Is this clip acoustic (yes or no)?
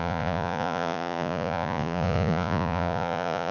no